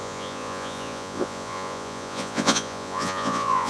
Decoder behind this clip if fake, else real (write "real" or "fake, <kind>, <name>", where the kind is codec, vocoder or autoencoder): fake, vocoder, Vocos